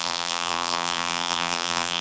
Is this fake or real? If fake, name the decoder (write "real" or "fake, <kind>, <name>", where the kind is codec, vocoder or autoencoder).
fake, vocoder, BigVGAN v2